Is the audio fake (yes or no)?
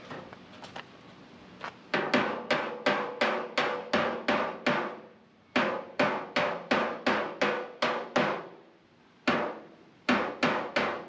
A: no